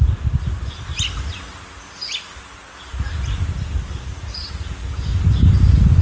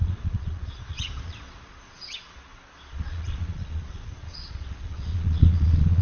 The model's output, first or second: second